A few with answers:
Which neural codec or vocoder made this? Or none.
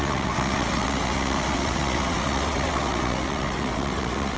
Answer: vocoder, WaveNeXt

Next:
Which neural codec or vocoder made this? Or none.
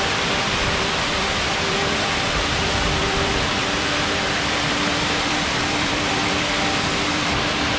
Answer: vocoder, BigVGAN v2